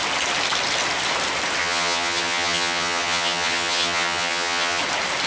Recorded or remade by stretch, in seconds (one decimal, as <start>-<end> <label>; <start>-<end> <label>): 0.0-1.6 recorded; 1.6-4.8 remade; 4.8-5.3 recorded